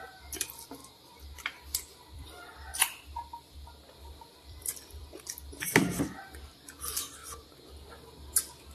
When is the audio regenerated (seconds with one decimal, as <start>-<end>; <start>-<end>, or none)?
0.0-0.8; 1.4-7.2; 7.7-8.7